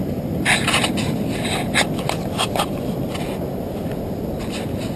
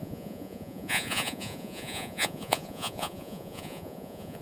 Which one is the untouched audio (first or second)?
first